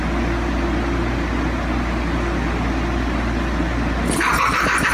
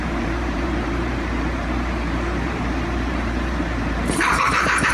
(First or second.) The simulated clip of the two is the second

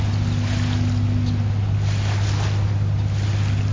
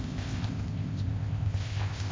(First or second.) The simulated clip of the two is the second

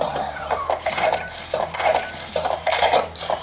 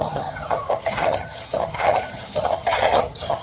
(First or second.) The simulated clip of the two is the second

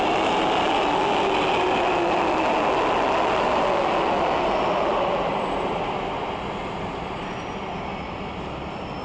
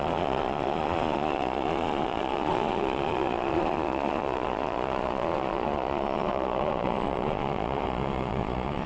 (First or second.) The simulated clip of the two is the second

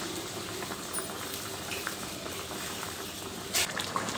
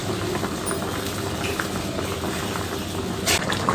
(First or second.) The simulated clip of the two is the first